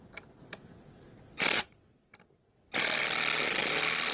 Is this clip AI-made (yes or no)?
no